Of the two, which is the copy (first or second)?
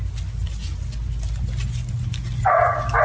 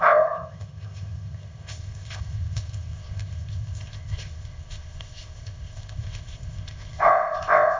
second